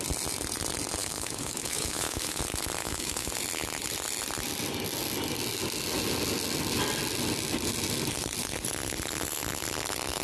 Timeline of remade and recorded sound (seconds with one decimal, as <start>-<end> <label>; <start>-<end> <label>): 0.0-1.0 recorded; 1.0-2.4 remade; 2.4-2.8 recorded; 2.8-3.3 remade; 3.3-10.2 recorded